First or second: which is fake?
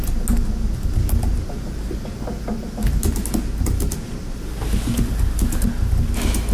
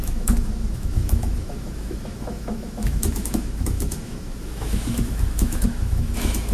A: second